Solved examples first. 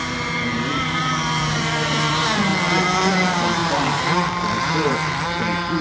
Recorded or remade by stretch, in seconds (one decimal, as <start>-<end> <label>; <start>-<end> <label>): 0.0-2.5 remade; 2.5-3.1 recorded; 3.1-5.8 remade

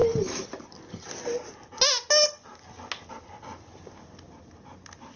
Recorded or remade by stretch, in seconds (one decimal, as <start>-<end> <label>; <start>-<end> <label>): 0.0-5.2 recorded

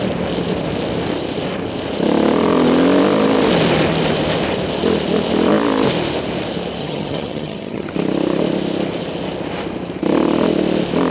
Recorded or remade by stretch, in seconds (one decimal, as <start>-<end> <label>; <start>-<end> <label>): 0.0-6.8 recorded; 6.8-7.9 remade; 7.9-11.1 recorded